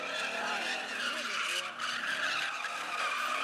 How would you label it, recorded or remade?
remade